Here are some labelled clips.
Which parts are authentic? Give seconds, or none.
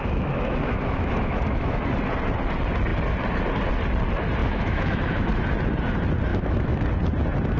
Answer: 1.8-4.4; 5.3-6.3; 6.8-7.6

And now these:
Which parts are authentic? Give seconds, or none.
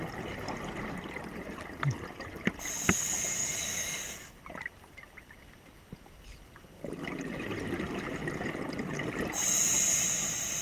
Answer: 0.0-3.4; 4.4-10.6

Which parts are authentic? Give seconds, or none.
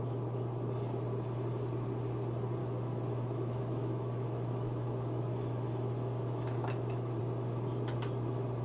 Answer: 0.0-2.6; 7.2-8.6